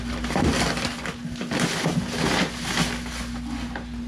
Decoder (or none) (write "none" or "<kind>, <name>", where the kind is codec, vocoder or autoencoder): none